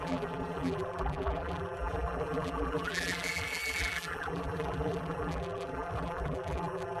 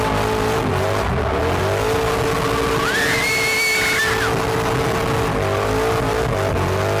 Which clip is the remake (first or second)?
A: first